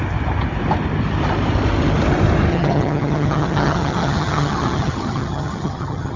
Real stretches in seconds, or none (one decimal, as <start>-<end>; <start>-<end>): 0.0-2.5